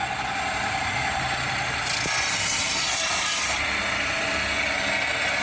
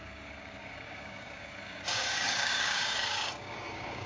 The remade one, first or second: second